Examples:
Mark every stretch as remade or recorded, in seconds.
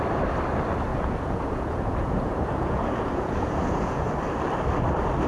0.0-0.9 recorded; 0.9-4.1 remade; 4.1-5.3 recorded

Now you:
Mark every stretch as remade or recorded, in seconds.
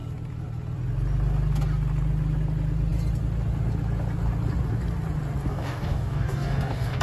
0.0-5.5 recorded; 5.5-7.0 remade